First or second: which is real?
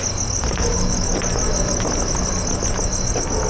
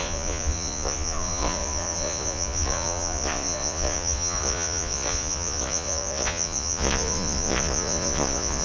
first